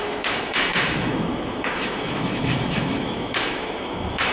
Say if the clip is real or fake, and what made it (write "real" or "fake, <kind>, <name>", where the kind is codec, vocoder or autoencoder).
fake, autoencoder, DAC-VAE